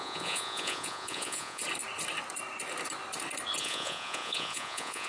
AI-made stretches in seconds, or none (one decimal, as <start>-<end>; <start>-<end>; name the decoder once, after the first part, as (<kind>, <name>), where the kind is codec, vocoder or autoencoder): 0.0-1.6 (vocoder, Vocos); 3.6-5.1